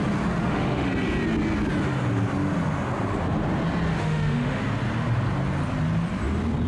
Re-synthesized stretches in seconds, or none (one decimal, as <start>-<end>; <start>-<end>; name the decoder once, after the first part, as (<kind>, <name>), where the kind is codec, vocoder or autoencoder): 0.4-0.9 (autoencoder, DAC-VAE); 3.9-4.6